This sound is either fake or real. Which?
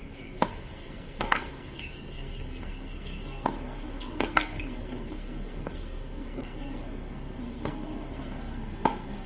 fake